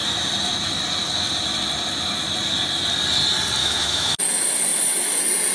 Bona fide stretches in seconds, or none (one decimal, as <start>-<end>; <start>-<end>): 0.0-3.6; 4.2-5.5